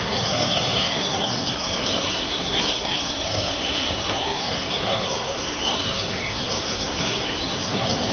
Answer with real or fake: fake